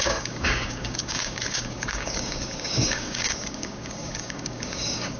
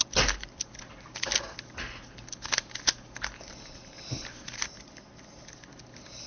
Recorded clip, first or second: second